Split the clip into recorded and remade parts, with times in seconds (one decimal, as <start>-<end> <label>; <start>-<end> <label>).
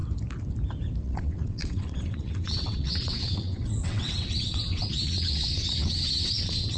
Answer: 0.0-1.0 recorded; 1.0-6.8 remade